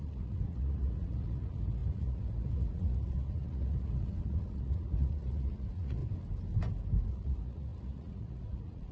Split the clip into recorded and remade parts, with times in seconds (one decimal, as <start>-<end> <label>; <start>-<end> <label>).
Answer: 0.0-6.0 remade; 6.0-7.1 recorded; 7.1-8.9 remade